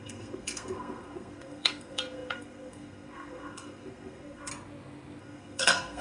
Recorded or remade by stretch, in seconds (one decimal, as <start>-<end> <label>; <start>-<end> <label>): 0.0-4.5 remade; 4.5-5.2 recorded; 5.2-6.0 remade